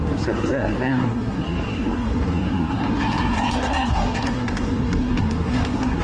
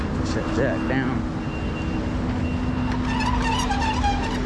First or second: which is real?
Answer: second